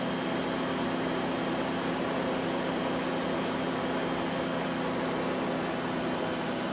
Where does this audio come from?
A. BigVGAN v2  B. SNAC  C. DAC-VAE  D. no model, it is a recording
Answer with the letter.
D